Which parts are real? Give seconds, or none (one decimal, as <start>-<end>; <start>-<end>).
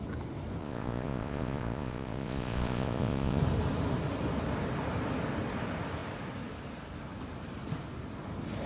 0.0-0.6; 3.4-8.7